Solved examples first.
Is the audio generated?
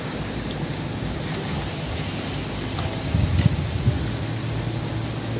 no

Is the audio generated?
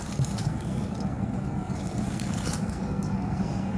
yes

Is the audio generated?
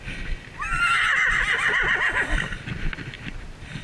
no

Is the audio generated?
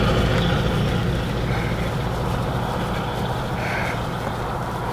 no